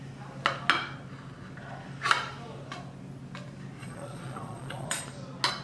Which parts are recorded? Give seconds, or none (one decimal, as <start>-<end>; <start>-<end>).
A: 0.0-3.8; 5.0-5.6